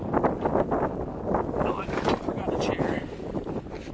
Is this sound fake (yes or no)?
no